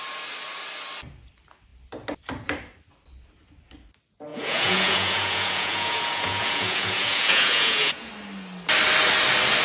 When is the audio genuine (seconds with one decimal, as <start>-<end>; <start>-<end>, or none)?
0.0-4.3; 8.1-9.6